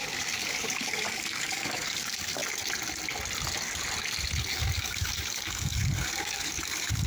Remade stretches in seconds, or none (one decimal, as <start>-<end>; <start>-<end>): 0.0-2.4; 4.5-7.1